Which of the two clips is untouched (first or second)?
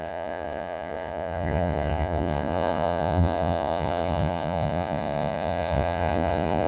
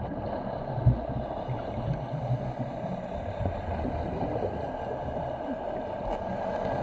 second